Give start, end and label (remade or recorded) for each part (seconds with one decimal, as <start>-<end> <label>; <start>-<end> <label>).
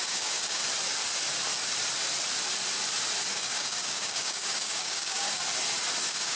0.0-0.6 remade; 0.6-3.3 recorded; 3.3-5.4 remade; 5.4-6.0 recorded; 6.0-6.4 remade